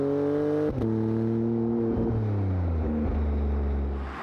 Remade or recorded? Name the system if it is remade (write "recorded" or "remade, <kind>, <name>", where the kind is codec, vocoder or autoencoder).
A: recorded